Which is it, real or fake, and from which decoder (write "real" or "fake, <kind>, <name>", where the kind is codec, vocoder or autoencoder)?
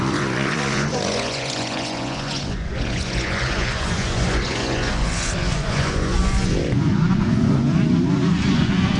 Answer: fake, vocoder, Vocos